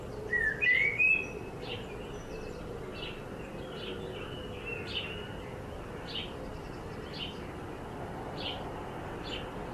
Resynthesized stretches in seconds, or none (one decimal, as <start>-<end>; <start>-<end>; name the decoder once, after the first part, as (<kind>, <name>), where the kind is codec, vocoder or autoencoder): none